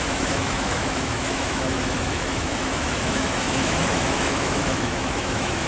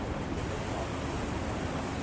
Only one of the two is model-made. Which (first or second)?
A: first